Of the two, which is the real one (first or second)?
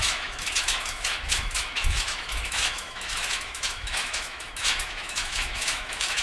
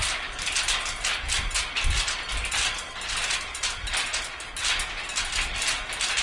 second